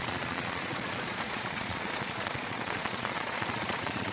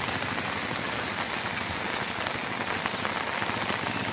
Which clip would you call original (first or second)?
second